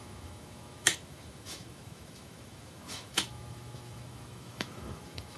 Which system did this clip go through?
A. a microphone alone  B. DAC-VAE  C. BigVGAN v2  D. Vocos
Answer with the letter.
B